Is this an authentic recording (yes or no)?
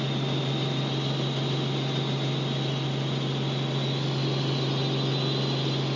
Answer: yes